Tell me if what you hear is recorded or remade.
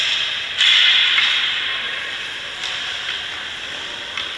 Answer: recorded